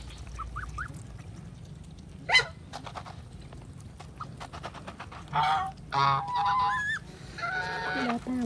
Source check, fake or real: real